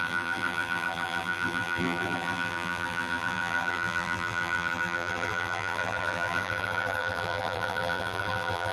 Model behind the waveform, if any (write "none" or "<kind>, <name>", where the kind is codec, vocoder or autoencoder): vocoder, BigVGAN v2